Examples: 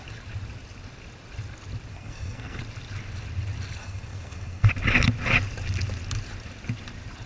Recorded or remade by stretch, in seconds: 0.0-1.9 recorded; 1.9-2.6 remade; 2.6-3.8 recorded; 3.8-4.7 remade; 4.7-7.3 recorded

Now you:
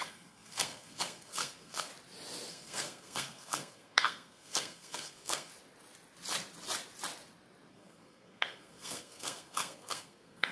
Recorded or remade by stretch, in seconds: 0.0-1.9 remade; 1.9-2.5 recorded; 2.5-5.5 remade; 5.5-7.7 recorded; 7.7-10.5 remade